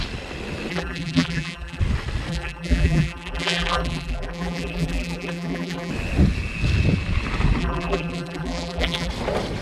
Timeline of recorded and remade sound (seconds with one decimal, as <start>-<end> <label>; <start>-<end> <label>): 0.0-0.7 recorded; 0.7-1.8 remade; 1.8-2.3 recorded; 2.3-5.9 remade; 5.9-7.6 recorded; 7.6-9.1 remade; 9.1-9.6 recorded